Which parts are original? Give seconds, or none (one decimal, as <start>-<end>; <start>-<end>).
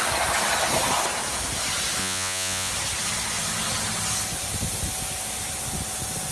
0.0-2.0; 2.7-6.3